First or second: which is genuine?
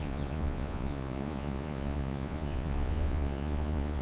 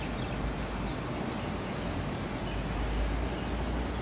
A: second